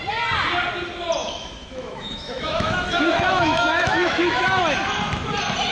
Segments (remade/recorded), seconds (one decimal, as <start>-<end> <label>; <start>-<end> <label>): 0.0-1.2 recorded; 1.2-4.6 remade; 4.6-5.7 recorded